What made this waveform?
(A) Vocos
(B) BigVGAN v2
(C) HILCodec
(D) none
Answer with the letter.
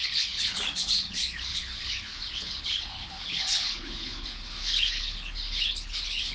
C